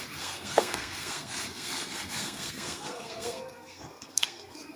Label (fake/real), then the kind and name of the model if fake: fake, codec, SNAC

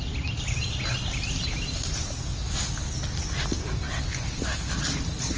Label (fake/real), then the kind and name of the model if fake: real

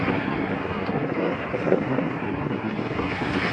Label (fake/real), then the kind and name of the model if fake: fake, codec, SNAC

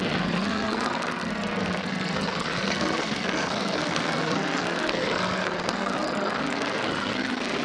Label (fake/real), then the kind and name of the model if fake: fake, codec, SNAC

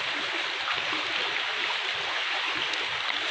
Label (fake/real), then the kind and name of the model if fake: real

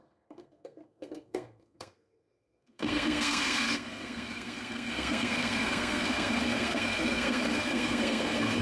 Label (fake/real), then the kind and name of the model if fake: fake, codec, SNAC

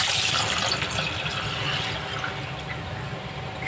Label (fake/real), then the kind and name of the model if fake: real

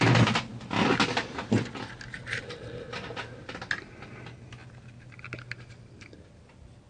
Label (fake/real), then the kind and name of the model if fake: real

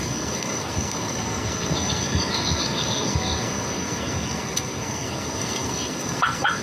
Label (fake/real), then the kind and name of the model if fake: fake, codec, SNAC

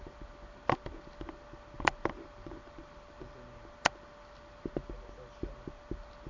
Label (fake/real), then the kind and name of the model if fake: real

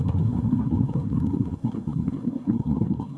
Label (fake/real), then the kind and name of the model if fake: fake, codec, SNAC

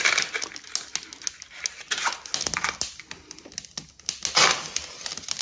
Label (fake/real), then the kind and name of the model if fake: real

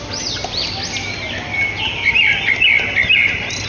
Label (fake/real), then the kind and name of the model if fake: real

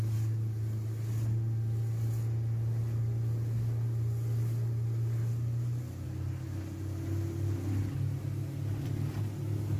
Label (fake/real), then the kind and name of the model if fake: real